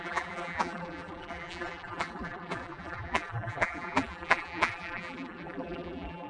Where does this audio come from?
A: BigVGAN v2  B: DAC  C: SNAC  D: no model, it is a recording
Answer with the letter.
A